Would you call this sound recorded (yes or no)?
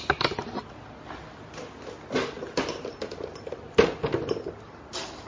yes